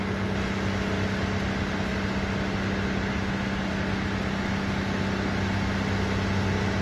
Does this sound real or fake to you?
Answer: real